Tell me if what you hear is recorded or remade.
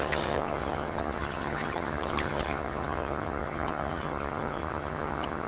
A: remade